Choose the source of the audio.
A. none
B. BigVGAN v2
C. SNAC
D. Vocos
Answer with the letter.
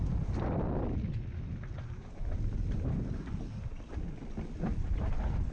A